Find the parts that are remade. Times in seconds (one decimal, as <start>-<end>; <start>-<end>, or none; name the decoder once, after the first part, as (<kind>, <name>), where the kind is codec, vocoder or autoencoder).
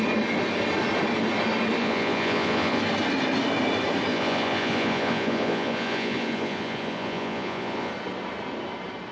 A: 1.8-2.8 (vocoder, Vocos); 4.1-7.9